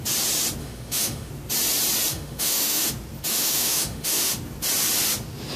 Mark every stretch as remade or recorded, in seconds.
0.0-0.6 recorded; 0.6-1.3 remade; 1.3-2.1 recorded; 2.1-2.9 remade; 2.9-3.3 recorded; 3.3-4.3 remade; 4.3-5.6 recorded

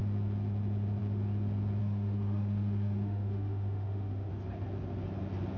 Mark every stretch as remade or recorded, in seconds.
0.0-1.8 recorded; 1.8-4.3 remade; 4.3-5.6 recorded

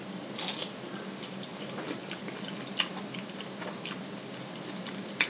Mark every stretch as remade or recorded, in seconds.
0.0-5.3 recorded